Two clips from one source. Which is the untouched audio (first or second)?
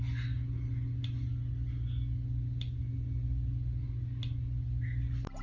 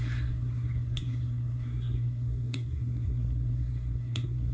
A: first